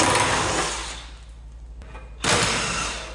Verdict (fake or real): real